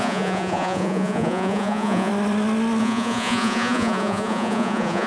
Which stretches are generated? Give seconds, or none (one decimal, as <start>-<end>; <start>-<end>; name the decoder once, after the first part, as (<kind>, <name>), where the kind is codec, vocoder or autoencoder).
0.0-2.1 (vocoder, Vocos); 2.8-5.1